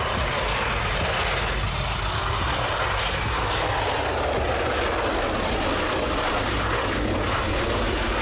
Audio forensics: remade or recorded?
recorded